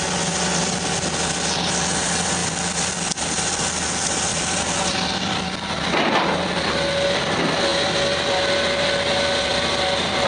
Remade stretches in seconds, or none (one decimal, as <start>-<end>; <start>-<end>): none